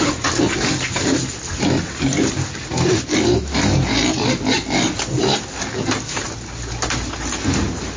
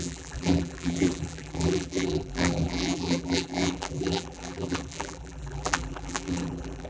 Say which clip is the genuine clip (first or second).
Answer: first